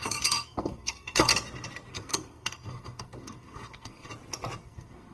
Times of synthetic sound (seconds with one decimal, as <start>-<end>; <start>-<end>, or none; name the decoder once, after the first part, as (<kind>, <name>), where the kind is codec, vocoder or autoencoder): 0.0-1.3 (codec, SNAC); 1.9-4.1; 4.6-5.1